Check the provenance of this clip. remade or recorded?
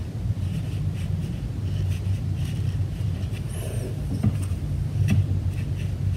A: recorded